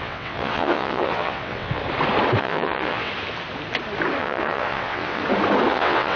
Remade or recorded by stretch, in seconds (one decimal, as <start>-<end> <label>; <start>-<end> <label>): 0.0-1.8 remade; 1.8-2.4 recorded; 2.4-3.1 remade; 3.1-4.2 recorded; 4.2-5.2 remade; 5.2-5.7 recorded; 5.7-6.2 remade